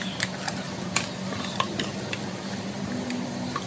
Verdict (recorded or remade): recorded